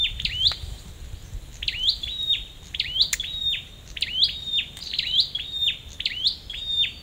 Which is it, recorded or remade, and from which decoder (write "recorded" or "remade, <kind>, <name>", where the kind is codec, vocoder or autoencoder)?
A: recorded